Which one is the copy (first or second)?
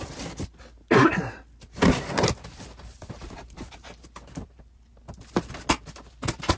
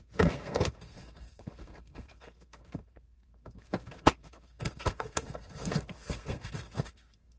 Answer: second